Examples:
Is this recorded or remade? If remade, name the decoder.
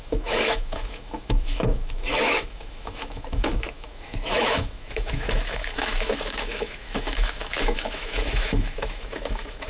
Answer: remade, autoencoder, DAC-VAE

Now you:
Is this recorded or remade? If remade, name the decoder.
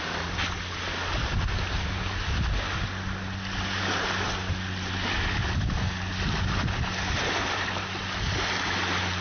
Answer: recorded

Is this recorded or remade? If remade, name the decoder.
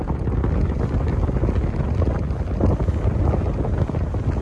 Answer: recorded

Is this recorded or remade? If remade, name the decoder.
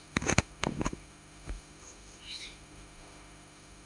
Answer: remade, autoencoder, DAC-VAE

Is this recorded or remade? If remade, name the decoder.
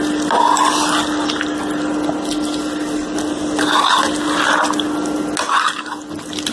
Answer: recorded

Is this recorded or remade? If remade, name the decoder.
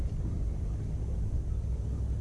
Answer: recorded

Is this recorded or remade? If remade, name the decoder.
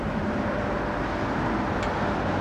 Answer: recorded